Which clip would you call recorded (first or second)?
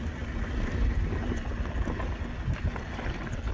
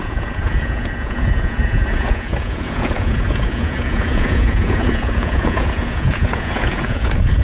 first